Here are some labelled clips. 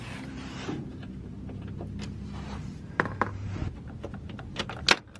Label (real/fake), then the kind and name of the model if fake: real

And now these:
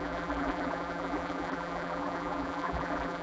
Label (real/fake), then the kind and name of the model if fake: fake, vocoder, BigVGAN v2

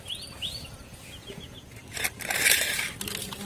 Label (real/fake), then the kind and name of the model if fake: real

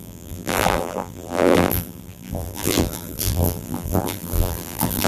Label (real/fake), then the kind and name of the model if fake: fake, vocoder, BigVGAN v2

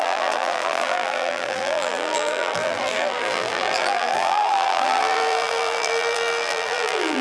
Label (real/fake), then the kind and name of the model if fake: fake, vocoder, BigVGAN v2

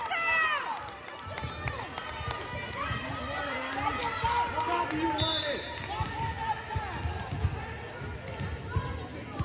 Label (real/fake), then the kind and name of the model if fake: real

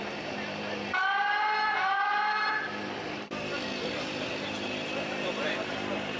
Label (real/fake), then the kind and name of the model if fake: fake, vocoder, BigVGAN v2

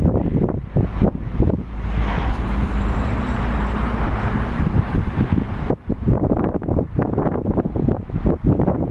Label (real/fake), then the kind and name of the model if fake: fake, vocoder, BigVGAN v2